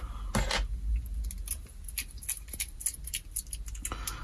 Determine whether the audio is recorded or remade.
recorded